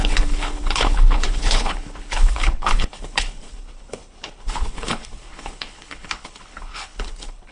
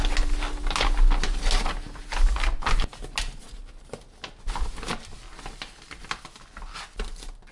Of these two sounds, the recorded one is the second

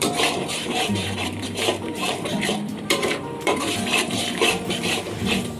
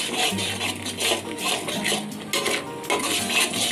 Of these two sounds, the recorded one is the second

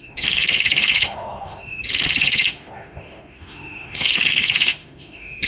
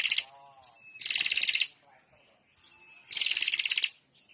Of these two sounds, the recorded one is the second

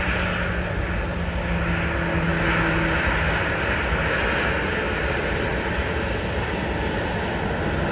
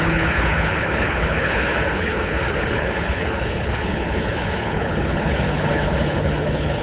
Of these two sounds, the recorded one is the first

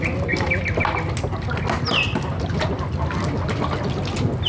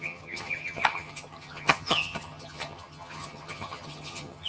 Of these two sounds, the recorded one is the first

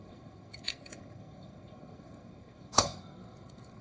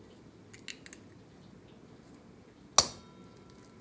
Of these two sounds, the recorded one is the second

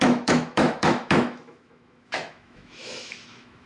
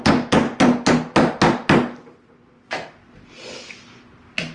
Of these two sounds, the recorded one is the second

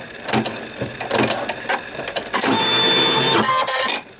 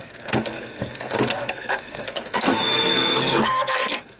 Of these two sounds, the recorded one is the first